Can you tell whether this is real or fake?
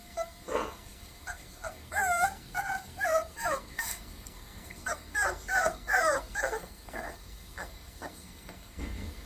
fake